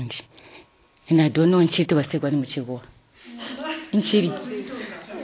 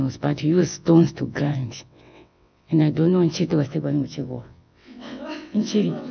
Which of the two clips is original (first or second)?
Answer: first